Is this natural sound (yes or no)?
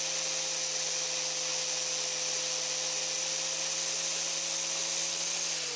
yes